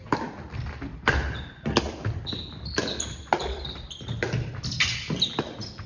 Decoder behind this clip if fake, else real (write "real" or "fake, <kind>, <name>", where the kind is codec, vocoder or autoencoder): real